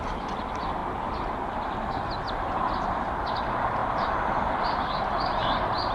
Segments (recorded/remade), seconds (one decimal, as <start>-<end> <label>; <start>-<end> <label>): 0.0-5.9 recorded

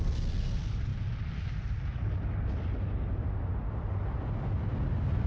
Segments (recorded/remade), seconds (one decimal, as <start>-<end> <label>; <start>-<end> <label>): 0.0-5.3 recorded

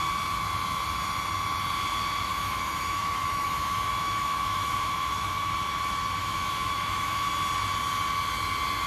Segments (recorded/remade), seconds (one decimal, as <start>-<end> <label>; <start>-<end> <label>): 0.0-2.3 recorded; 2.3-5.5 remade; 5.5-6.2 recorded; 6.2-7.3 remade; 7.3-8.9 recorded

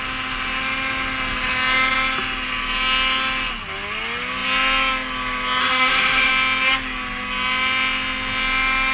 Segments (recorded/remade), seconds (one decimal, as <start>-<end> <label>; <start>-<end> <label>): 0.0-5.6 recorded; 5.6-6.3 remade; 6.3-8.9 recorded

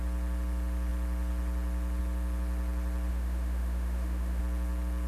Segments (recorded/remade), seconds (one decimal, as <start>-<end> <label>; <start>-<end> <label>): 0.0-3.1 recorded; 3.1-4.4 remade; 4.4-5.1 recorded

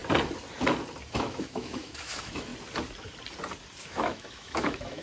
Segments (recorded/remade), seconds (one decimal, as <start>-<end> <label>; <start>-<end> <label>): 0.0-1.1 recorded; 1.1-2.5 remade; 2.5-3.8 recorded; 3.8-5.0 remade